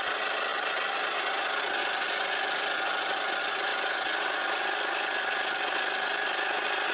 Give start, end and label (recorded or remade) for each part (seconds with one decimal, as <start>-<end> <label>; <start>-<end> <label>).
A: 0.0-6.9 recorded